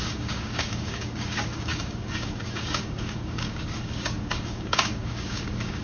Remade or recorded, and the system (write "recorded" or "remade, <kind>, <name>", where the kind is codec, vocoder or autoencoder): remade, codec, DAC